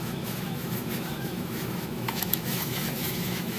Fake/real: fake